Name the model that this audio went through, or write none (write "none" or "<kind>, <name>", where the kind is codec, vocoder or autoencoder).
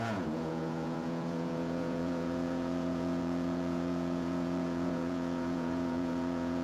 vocoder, Vocos